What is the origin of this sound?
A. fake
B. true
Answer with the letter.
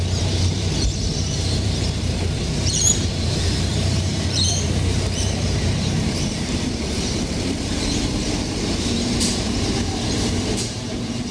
A